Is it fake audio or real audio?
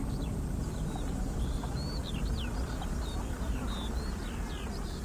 real